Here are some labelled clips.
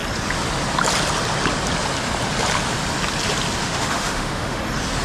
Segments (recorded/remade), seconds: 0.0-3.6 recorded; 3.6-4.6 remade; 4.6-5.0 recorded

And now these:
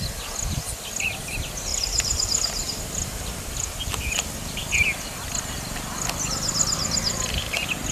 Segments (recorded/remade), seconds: 0.0-1.7 recorded; 1.7-4.6 remade; 4.6-7.9 recorded

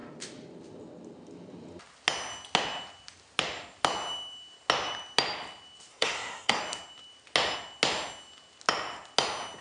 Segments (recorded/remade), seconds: 0.0-5.9 recorded; 5.9-6.6 remade; 6.6-9.6 recorded